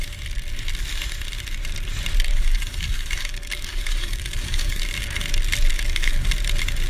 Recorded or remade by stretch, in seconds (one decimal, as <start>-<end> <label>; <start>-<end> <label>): 0.0-2.3 recorded; 2.3-4.8 remade; 4.8-5.7 recorded; 5.7-6.3 remade; 6.3-6.9 recorded